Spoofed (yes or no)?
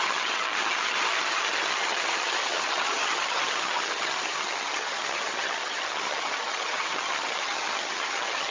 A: yes